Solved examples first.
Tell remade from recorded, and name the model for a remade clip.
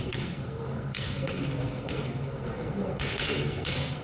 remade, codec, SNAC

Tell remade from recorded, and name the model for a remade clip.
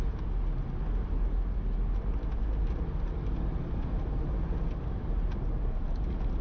recorded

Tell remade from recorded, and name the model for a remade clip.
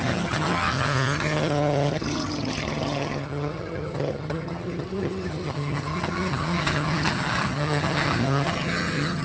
remade, vocoder, HiFi-GAN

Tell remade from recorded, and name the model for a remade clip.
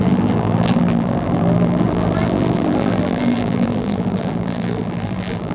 remade, vocoder, BigVGAN v2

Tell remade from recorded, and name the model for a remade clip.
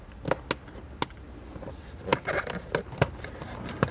recorded